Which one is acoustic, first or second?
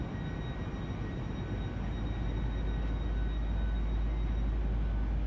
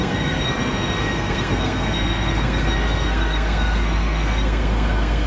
first